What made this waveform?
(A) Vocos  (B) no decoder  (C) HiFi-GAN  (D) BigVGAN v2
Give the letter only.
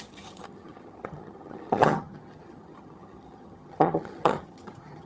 C